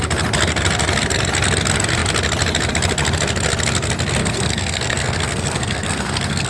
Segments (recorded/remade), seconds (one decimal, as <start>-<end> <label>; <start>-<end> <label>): 0.0-4.2 recorded; 4.2-6.5 remade